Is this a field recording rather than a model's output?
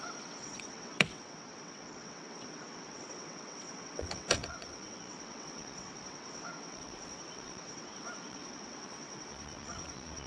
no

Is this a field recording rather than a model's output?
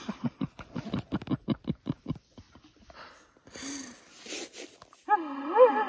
yes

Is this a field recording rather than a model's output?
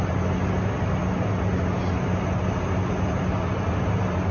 yes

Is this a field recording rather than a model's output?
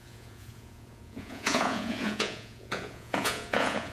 no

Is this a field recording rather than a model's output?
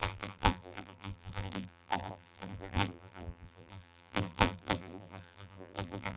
no